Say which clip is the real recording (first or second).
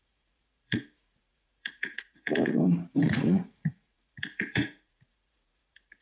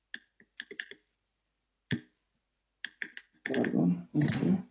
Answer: second